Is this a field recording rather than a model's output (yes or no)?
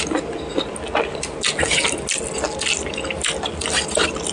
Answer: yes